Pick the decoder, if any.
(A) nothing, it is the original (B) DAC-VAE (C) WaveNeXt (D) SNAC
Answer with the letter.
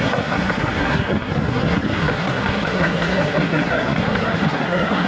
D